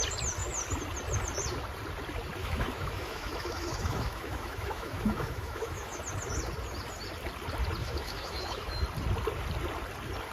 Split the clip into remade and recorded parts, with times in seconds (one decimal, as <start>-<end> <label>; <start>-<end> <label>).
0.0-2.4 recorded; 2.4-6.0 remade; 6.0-7.8 recorded; 7.8-8.8 remade; 8.8-10.3 recorded